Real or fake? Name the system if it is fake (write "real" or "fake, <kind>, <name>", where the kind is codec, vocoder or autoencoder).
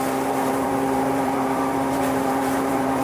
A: fake, vocoder, BigVGAN v2